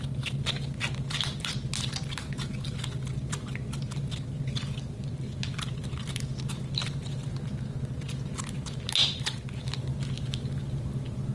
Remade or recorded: recorded